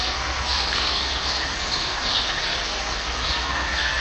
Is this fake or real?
fake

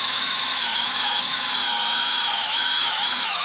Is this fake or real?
fake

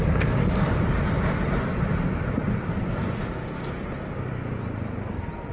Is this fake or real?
real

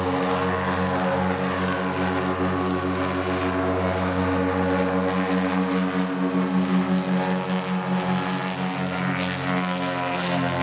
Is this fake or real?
real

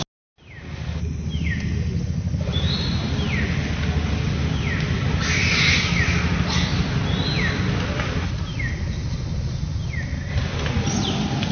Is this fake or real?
real